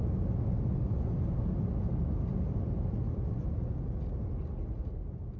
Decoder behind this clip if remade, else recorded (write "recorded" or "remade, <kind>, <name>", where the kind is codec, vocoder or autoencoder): recorded